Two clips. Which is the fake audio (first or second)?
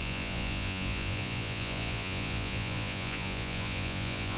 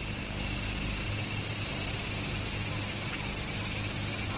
first